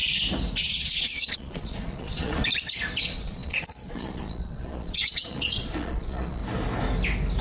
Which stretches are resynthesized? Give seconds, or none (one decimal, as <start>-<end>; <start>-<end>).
0.6-2.4; 3.0-6.4